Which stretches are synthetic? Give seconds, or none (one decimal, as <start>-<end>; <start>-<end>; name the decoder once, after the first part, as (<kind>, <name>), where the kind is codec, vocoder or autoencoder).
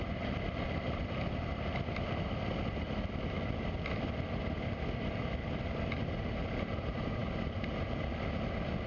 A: none